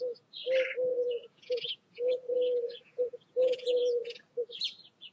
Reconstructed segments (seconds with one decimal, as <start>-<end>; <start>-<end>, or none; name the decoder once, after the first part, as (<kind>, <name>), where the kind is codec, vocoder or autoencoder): 0.9-4.0 (vocoder, Vocos)